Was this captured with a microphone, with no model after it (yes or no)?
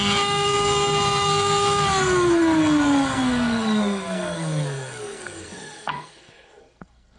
no